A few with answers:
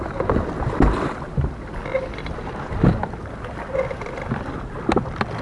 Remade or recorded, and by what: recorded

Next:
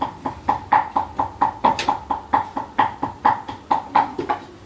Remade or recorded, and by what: recorded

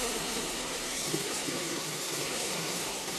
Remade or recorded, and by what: remade, codec, SNAC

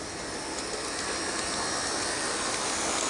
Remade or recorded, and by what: recorded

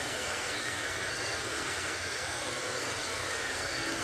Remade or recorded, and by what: remade, codec, SNAC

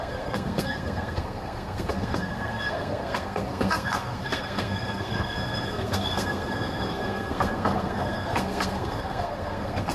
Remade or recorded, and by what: remade, codec, SNAC